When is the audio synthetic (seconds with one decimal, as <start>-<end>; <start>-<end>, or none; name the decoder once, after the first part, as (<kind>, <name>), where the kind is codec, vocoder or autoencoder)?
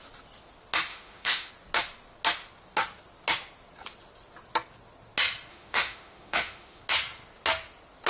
0.9-1.5 (autoencoder, DAC-VAE); 5.5-6.8